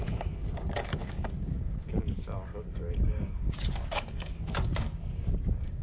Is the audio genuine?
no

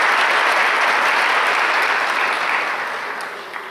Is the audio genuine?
yes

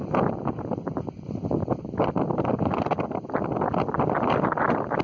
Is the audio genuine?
yes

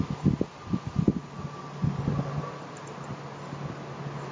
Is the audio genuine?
yes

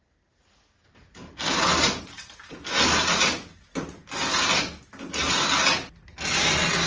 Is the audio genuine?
yes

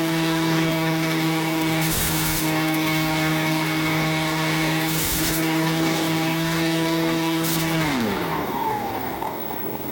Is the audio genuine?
no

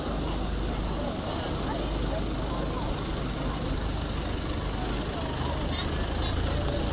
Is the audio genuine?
yes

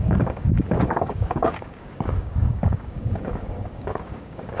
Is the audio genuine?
no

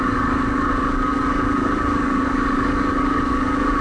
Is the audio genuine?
no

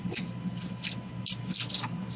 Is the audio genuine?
yes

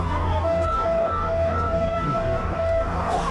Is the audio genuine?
no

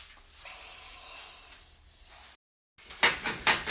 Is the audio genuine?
yes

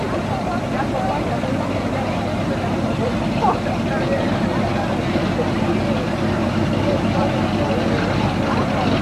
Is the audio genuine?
yes